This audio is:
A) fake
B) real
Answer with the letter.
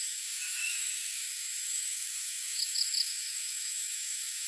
A